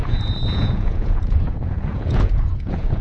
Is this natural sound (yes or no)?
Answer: no